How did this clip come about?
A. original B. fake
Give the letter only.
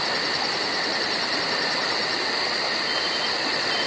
A